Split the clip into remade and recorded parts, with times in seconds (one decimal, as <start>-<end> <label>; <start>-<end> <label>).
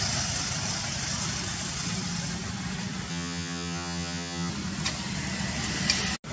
0.0-3.1 recorded; 3.1-4.5 remade; 4.5-6.3 recorded